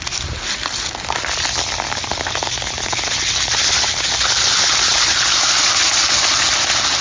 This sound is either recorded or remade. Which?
recorded